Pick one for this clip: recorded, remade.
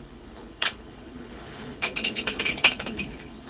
remade